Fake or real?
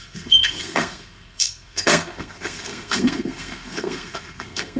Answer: fake